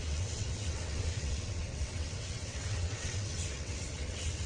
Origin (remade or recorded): remade